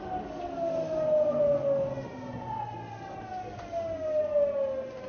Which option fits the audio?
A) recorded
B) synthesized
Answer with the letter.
A